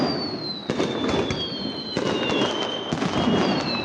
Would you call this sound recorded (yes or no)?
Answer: yes